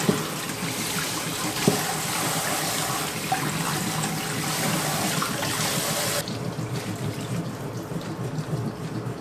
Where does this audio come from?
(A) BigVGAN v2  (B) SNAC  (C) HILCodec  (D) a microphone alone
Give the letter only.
D